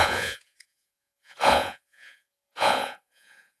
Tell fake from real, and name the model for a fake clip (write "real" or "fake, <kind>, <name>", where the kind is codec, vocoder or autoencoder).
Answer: fake, vocoder, Vocos